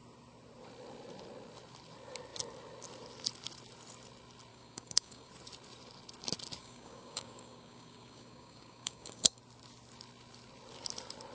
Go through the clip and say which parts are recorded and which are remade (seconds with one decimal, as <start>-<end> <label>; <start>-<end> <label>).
0.0-4.5 recorded; 4.5-5.3 remade; 5.3-6.6 recorded; 6.6-9.4 remade; 9.4-11.3 recorded